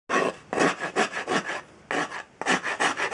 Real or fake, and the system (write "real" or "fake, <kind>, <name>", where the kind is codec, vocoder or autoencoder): real